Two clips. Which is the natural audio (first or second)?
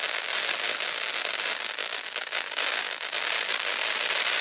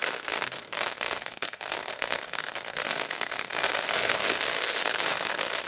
first